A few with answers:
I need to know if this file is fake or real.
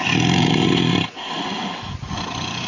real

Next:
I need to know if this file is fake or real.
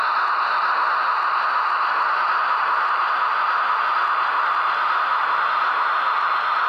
real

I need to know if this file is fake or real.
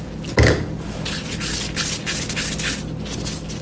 real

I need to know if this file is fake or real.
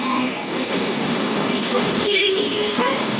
fake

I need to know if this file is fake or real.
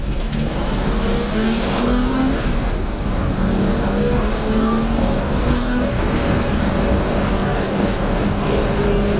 fake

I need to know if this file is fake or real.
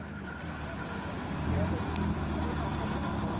real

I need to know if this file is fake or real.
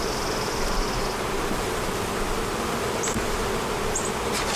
real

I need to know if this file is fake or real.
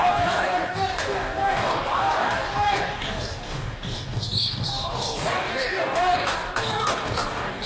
fake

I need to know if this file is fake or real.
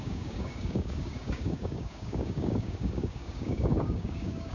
fake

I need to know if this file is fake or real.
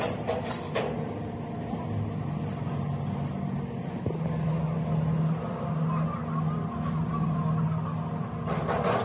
real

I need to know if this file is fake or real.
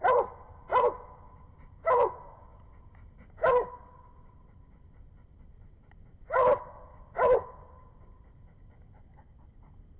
real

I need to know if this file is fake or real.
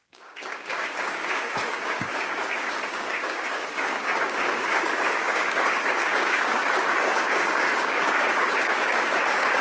fake